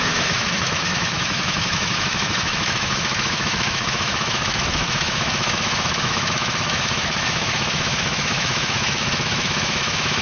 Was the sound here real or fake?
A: fake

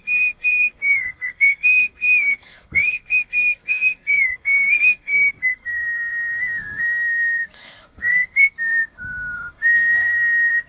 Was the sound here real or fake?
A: fake